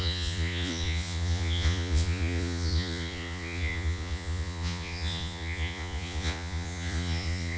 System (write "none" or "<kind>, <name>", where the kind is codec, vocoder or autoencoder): vocoder, Vocos